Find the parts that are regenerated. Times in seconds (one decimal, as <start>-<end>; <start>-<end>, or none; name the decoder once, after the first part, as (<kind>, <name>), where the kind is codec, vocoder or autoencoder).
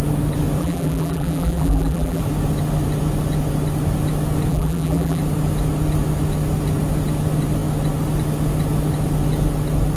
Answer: 0.6-2.2 (vocoder, BigVGAN v2); 4.5-5.2